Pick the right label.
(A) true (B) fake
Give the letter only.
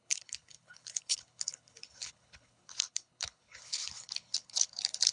B